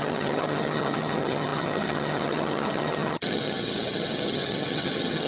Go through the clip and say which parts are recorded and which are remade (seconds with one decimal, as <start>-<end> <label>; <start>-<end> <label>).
0.0-5.3 remade